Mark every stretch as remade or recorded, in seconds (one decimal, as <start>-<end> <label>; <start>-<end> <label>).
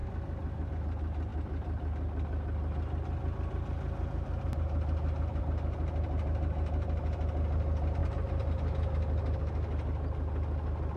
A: 0.0-11.0 recorded